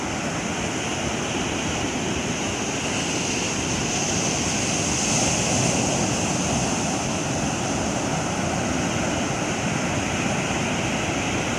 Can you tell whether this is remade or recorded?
recorded